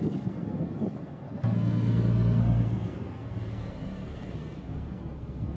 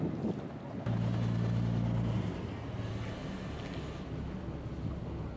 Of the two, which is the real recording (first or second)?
second